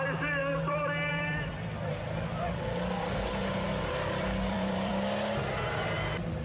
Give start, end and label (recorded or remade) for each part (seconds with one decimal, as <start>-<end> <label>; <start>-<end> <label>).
0.0-1.1 recorded; 1.1-4.9 remade; 4.9-6.4 recorded